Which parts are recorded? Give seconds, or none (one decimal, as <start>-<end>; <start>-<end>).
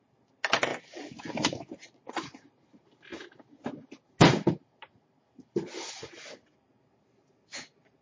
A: 0.0-2.0; 2.6-8.0